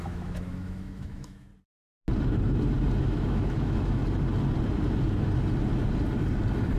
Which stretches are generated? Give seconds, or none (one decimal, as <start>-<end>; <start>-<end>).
0.0-1.5; 3.0-4.0